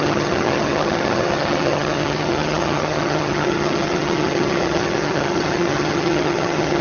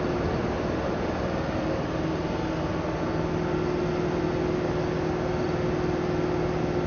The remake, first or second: first